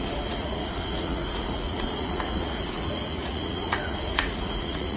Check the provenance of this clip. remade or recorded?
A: remade